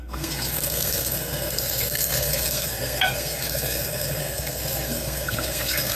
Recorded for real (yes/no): no